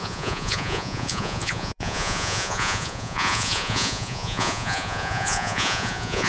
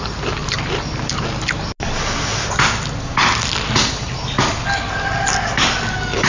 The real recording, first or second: second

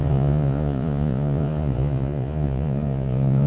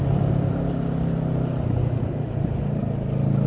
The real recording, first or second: second